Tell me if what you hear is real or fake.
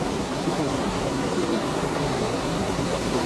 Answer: fake